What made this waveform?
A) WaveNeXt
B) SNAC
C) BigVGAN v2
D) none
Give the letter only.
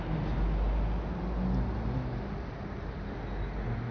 D